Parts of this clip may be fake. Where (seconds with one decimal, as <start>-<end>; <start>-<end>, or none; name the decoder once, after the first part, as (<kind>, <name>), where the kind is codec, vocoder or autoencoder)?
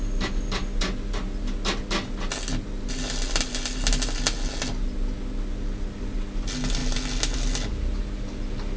none